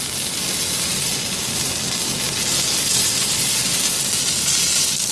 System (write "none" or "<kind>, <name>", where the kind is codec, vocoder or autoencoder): none